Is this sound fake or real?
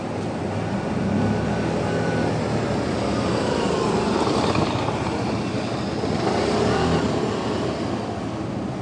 real